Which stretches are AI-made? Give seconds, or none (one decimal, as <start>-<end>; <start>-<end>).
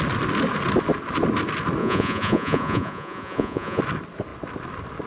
1.8-3.8